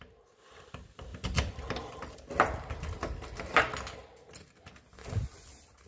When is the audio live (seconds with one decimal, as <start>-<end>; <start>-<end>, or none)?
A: 0.0-5.9